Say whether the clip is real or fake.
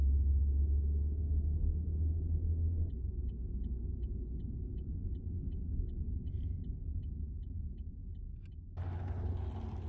real